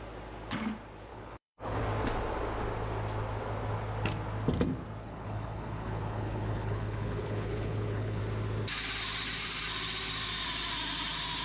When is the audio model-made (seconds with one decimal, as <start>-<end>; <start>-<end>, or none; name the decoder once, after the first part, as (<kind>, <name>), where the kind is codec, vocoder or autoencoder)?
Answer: 1.1-1.8 (codec, HILCodec); 5.0-8.2